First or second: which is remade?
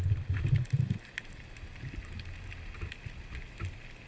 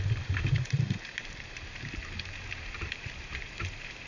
second